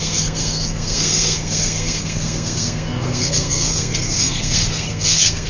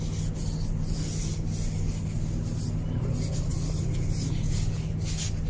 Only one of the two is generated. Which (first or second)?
first